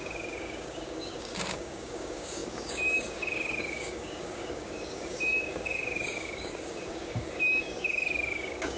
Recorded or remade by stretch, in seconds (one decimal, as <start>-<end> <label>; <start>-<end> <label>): 0.0-8.8 remade